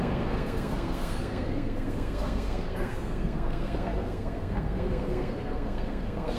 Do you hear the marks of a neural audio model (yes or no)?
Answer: yes